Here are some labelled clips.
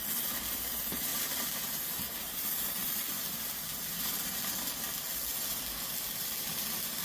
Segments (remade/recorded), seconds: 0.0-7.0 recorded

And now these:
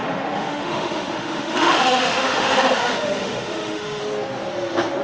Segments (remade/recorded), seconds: 0.0-4.0 remade; 4.0-5.0 recorded

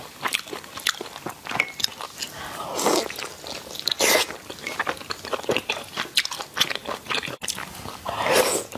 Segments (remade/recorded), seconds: 0.0-8.8 recorded

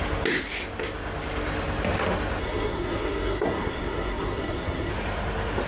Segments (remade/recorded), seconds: 0.0-2.4 recorded; 2.4-4.9 remade; 4.9-5.7 recorded

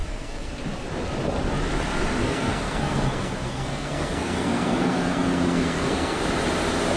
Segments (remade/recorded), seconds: 0.0-0.5 remade; 0.5-2.2 recorded; 2.2-6.2 remade; 6.2-7.0 recorded

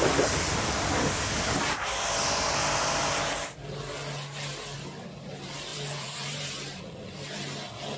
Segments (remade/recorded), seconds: 0.0-5.7 recorded; 5.7-6.8 remade; 6.8-8.0 recorded

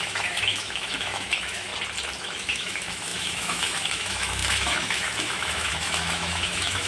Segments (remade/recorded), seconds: 0.0-1.7 remade; 1.7-2.2 recorded; 2.2-6.9 remade

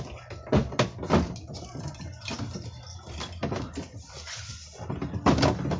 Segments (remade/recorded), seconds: 0.0-5.8 recorded